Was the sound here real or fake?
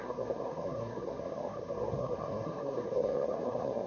fake